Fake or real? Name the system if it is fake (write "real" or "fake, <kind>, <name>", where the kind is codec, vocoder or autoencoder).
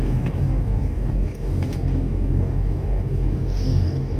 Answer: fake, codec, DAC